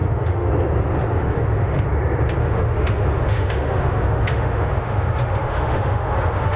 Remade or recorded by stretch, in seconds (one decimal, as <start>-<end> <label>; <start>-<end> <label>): 0.0-0.5 remade; 0.5-1.1 recorded; 1.1-1.9 remade; 1.9-2.4 recorded; 2.4-6.6 remade